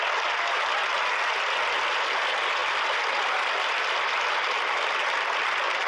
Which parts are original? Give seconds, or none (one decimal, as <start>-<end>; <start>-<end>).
0.0-5.9